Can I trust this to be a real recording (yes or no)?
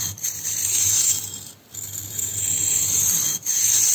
no